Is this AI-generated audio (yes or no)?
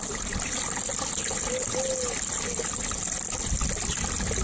no